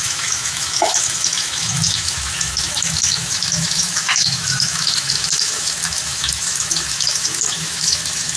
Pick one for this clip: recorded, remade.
remade